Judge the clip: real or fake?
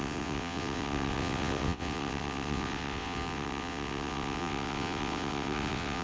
fake